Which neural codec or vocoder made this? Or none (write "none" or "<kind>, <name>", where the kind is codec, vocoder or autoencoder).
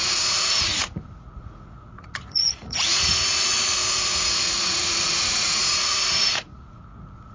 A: vocoder, Vocos